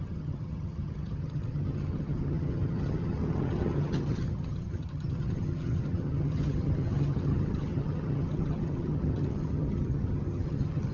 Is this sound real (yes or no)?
no